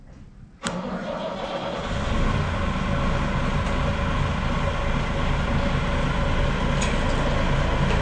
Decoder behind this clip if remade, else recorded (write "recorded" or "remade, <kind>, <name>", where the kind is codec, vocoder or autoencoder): recorded